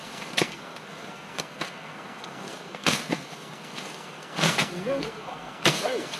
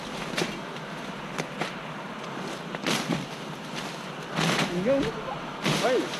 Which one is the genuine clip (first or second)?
second